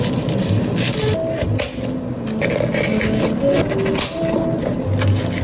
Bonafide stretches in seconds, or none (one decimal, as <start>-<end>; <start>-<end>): 0.0-5.4